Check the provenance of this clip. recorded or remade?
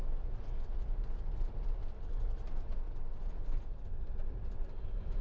recorded